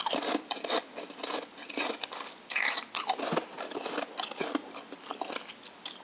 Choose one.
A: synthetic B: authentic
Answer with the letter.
B